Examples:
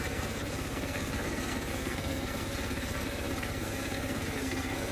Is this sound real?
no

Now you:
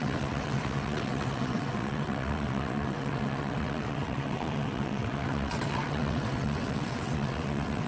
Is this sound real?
no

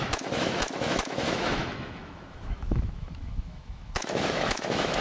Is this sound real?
no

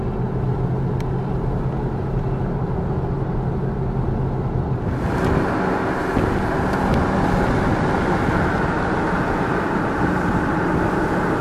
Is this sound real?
yes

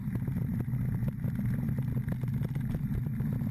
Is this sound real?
yes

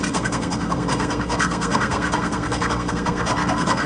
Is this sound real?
no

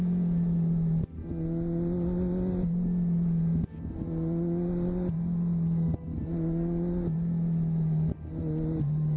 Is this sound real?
yes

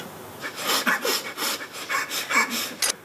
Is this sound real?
yes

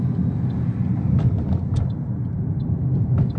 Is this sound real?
yes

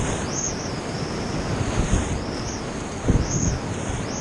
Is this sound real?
yes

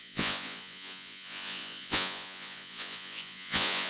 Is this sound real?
no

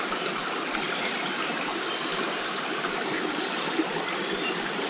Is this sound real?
yes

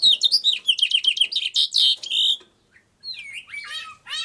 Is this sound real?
yes